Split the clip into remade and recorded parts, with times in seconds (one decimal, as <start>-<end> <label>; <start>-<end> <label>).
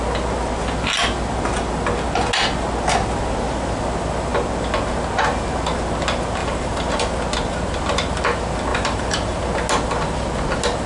0.0-6.4 recorded; 6.4-7.2 remade; 7.2-8.7 recorded; 8.7-9.4 remade; 9.4-10.9 recorded